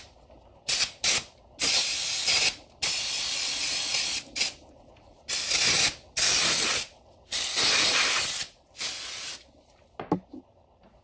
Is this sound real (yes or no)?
yes